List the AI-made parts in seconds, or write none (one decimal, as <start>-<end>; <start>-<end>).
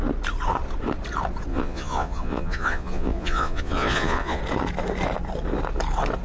1.5-4.4